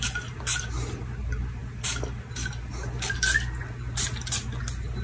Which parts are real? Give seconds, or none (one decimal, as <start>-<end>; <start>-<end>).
0.0-5.0